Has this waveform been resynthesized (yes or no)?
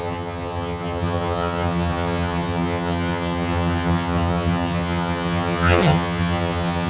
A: yes